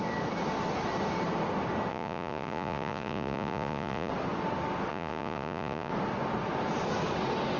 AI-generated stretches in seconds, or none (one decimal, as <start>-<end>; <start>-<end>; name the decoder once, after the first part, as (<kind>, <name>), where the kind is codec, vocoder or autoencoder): 1.9-4.1 (vocoder, Vocos); 4.9-5.9